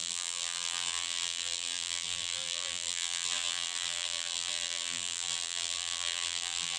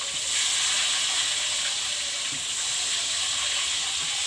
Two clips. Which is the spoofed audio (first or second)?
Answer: first